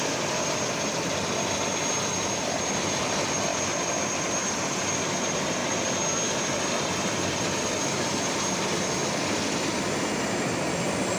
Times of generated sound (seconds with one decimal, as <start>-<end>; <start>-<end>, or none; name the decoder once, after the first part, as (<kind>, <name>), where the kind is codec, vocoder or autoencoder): 0.0-5.6 (vocoder, BigVGAN v2); 6.7-11.2